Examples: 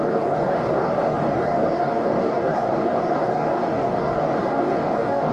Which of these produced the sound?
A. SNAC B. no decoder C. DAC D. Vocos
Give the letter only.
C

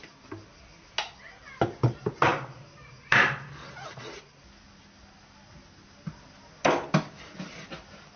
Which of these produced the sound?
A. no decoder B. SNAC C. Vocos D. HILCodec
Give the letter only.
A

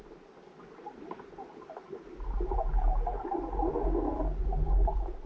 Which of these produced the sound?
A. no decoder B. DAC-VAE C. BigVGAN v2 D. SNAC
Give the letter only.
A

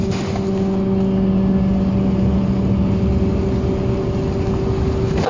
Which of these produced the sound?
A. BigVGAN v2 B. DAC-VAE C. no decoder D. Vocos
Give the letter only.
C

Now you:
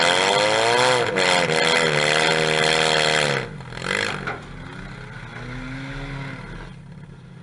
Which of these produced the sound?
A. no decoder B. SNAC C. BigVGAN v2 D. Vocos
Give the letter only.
A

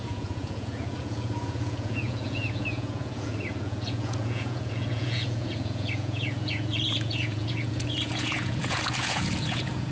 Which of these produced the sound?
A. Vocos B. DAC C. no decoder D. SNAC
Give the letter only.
A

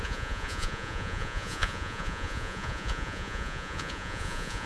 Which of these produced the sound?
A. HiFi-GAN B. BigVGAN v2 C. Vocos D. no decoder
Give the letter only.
C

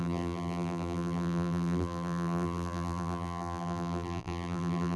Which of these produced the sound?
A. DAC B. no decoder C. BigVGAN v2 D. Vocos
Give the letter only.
C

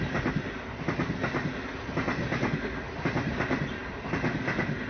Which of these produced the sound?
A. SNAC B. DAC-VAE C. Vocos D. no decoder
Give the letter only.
D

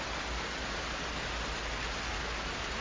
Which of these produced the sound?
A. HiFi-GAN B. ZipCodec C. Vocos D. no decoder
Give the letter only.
D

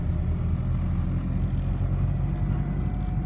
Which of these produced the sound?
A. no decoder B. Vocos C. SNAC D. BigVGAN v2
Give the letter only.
A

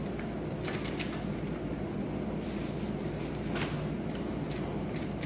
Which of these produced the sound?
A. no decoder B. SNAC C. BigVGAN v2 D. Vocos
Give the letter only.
A